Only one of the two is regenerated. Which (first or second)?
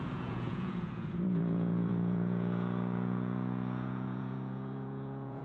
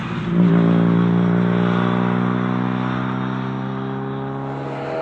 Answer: first